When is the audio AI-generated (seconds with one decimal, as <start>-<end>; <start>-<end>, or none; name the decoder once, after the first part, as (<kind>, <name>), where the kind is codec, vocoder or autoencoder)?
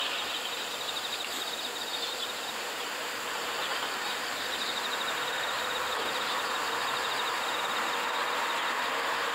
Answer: 1.9-7.1 (vocoder, BigVGAN v2)